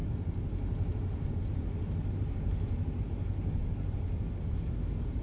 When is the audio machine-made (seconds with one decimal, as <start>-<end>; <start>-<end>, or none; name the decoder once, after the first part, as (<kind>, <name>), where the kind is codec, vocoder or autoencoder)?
none